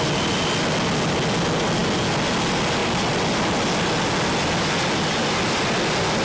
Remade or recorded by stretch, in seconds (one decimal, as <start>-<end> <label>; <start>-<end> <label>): 0.0-6.2 recorded

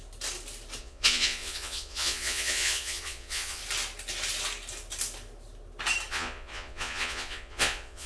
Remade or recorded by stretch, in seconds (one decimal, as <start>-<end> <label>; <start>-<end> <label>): 0.0-0.8 recorded; 0.8-3.6 remade; 3.6-6.1 recorded; 6.1-8.1 remade

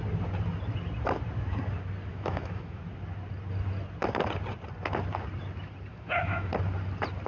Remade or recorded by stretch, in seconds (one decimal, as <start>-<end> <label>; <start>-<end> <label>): 0.0-2.1 recorded; 2.1-2.8 remade; 2.8-5.9 recorded; 5.9-6.5 remade; 6.5-7.3 recorded

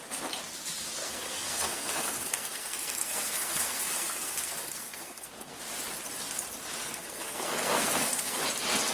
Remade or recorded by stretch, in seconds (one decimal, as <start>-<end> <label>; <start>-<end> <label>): 0.0-1.0 recorded; 1.0-5.6 remade; 5.6-6.8 recorded; 6.8-8.4 remade; 8.4-8.9 recorded

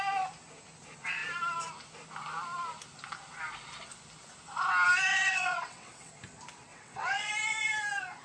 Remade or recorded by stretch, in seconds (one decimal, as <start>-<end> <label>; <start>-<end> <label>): 0.0-5.1 recorded; 5.1-6.1 remade; 6.1-6.7 recorded; 6.7-7.3 remade; 7.3-8.2 recorded

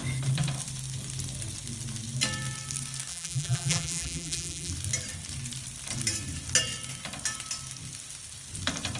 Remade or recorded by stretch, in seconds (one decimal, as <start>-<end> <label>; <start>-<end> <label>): 0.0-3.1 recorded; 3.1-4.7 remade; 4.7-9.0 recorded

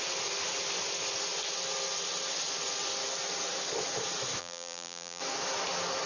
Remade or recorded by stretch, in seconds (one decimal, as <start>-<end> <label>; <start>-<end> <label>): 0.0-4.4 recorded; 4.4-5.2 remade; 5.2-6.1 recorded